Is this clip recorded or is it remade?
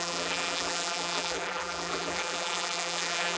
remade